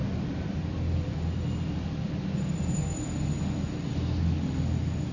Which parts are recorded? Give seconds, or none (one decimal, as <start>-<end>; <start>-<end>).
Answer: 3.1-5.1